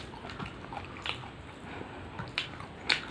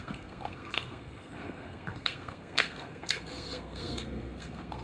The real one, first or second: first